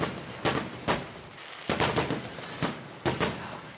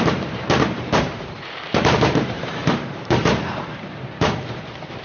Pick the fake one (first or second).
second